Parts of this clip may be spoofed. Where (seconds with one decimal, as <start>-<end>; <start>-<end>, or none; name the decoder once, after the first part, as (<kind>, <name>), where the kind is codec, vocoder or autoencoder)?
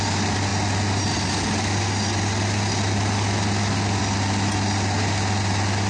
none